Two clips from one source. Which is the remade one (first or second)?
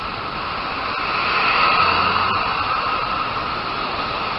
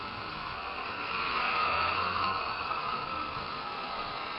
second